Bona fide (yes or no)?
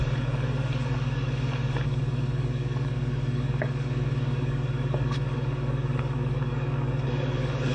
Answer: no